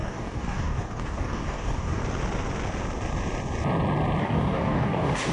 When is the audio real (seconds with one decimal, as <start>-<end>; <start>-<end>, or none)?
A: 2.0-4.2